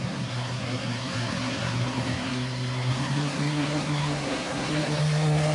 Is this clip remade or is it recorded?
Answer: remade